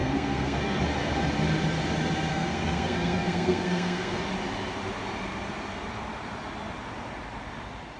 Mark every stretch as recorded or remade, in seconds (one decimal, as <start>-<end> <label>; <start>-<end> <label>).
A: 0.0-0.8 remade; 0.8-2.3 recorded; 2.3-4.2 remade; 4.2-8.0 recorded